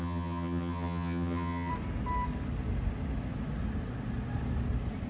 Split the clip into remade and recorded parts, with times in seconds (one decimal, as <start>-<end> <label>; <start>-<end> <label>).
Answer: 0.0-1.7 remade; 1.7-5.1 recorded